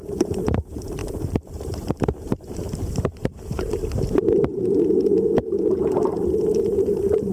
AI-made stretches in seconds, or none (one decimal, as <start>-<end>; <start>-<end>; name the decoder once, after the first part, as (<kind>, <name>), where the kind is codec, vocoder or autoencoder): 0.0-4.6 (vocoder, BigVGAN v2); 6.5-7.3